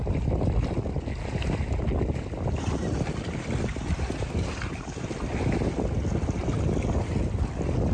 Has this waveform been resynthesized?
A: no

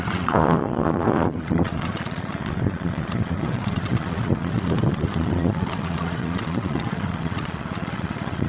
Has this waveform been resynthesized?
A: yes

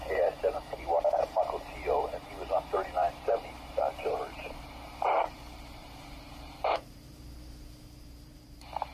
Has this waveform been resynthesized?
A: yes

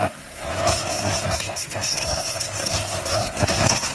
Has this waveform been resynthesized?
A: yes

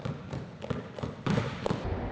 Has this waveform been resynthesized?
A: no